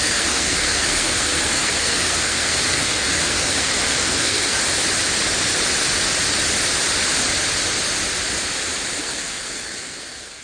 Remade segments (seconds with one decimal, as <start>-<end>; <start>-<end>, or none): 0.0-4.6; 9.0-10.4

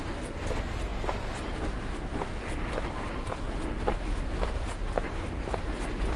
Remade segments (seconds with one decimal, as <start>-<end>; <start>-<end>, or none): none

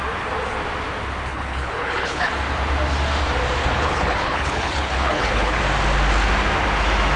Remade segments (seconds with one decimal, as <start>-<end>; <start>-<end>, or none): 1.3-2.3; 3.6-5.6

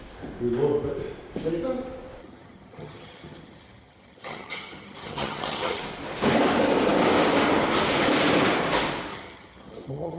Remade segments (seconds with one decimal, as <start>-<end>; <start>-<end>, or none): 2.2-5.8; 9.1-10.2